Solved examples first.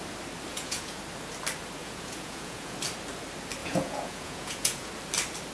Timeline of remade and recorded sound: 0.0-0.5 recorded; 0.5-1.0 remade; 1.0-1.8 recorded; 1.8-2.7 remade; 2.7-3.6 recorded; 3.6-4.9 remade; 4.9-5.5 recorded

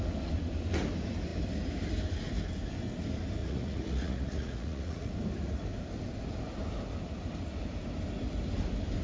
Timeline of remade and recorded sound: 0.0-3.4 recorded; 3.4-5.1 remade; 5.1-9.0 recorded

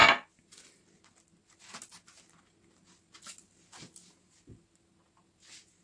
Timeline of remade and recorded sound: 0.0-5.8 recorded

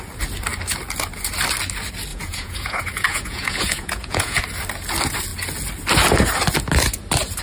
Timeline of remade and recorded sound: 0.0-2.1 recorded; 2.1-4.4 remade; 4.4-7.4 recorded

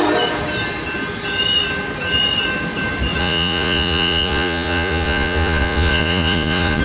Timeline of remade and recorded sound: 0.0-3.2 recorded; 3.2-6.8 remade

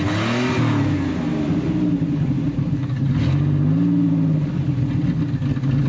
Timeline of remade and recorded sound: 0.0-5.9 recorded

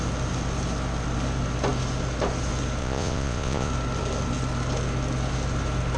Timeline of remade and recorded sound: 0.0-2.8 recorded; 2.8-3.7 remade; 3.7-6.0 recorded